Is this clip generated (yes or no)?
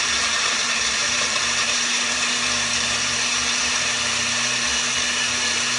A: yes